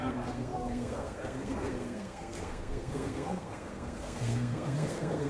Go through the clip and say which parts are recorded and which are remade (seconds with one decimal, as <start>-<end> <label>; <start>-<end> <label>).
0.0-5.3 remade